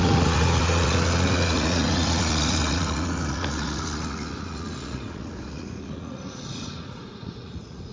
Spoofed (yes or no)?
yes